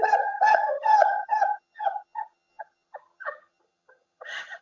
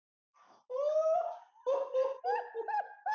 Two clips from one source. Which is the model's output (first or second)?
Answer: first